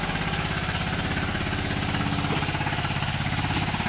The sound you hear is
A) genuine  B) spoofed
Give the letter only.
A